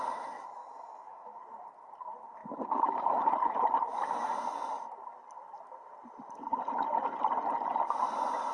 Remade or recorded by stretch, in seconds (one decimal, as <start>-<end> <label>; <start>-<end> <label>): 0.0-0.6 recorded; 0.6-1.4 remade; 1.4-2.4 recorded; 2.4-3.3 remade; 3.3-8.5 recorded